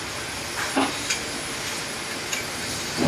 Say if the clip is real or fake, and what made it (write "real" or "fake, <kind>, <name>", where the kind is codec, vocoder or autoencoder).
real